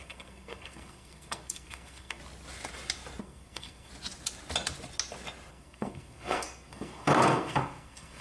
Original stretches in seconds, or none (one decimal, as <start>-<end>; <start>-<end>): 2.2-3.2; 3.9-5.5